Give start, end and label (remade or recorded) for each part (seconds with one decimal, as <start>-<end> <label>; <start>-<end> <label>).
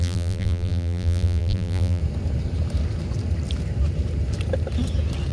0.0-2.0 remade; 2.0-5.3 recorded